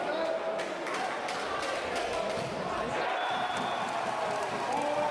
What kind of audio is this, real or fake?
real